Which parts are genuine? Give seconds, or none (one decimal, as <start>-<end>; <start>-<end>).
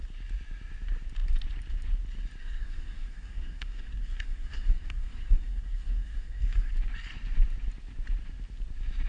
0.0-2.4; 6.7-9.1